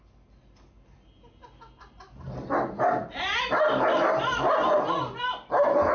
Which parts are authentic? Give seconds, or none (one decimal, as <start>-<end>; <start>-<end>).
0.0-1.4; 4.9-5.9

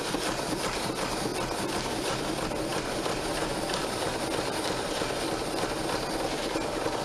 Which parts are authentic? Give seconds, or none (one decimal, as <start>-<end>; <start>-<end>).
0.0-7.0

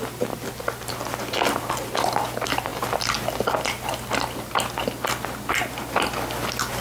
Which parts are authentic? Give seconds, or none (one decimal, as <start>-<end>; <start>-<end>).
0.0-6.8

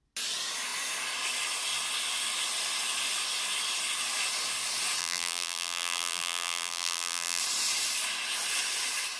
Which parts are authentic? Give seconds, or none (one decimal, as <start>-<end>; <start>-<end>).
0.0-5.0; 7.4-9.2

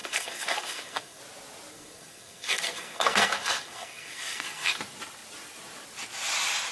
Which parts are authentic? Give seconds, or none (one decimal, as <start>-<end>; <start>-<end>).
1.2-1.7; 4.8-6.7

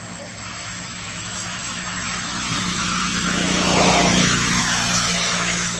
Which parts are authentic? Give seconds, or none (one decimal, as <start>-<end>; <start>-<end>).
none

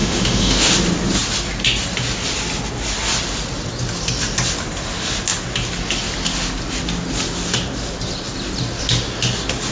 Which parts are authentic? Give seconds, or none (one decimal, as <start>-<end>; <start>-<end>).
0.7-9.7